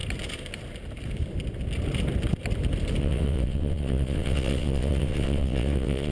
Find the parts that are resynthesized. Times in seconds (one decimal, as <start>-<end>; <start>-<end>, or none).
3.0-6.1